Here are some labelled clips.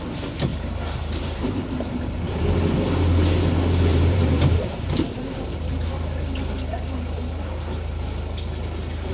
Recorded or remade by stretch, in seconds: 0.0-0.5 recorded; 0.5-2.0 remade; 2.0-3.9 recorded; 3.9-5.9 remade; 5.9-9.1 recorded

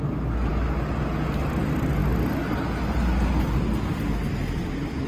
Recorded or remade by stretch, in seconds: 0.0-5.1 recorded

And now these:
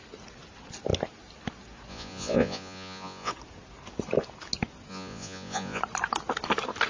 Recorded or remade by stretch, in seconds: 0.0-1.9 recorded; 1.9-3.3 remade; 3.3-4.9 recorded; 4.9-5.8 remade; 5.8-6.9 recorded